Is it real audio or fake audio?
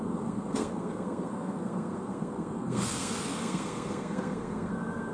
fake